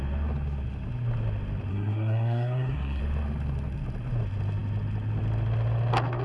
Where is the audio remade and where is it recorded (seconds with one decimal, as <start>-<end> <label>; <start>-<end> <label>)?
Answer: 0.0-1.7 recorded; 1.7-3.0 remade; 3.0-6.2 recorded

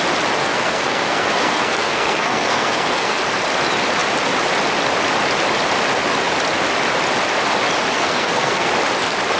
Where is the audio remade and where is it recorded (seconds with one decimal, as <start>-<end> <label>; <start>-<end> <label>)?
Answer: 0.0-0.4 recorded; 0.4-3.2 remade; 3.2-7.9 recorded; 7.9-8.7 remade; 8.7-9.4 recorded

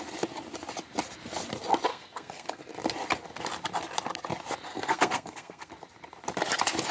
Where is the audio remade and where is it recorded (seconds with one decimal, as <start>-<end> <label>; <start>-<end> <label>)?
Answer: 0.0-1.9 recorded; 1.9-2.6 remade; 2.6-4.7 recorded; 4.7-5.7 remade; 5.7-6.9 recorded

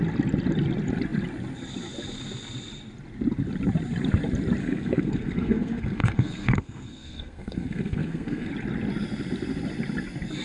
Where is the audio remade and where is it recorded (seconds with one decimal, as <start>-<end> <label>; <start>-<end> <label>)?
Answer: 0.0-4.6 recorded; 4.6-8.5 remade; 8.5-10.4 recorded